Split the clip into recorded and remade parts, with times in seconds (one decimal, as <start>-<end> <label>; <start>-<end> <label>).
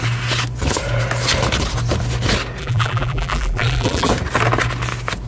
0.0-2.6 recorded; 2.6-4.1 remade; 4.1-5.3 recorded